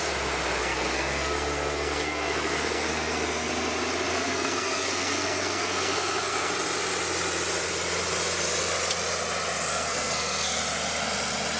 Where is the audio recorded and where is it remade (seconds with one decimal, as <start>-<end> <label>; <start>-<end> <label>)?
0.0-0.6 recorded; 0.6-3.5 remade; 3.5-4.1 recorded; 4.1-6.5 remade; 6.5-9.7 recorded; 9.7-10.6 remade; 10.6-11.6 recorded